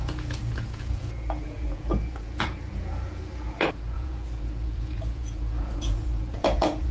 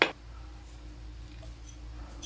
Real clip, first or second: second